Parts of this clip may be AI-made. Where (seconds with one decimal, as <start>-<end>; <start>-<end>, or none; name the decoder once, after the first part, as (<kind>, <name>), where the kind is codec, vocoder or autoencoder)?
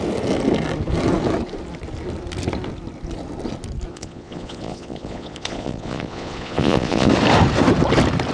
3.9-7.1 (vocoder, Vocos)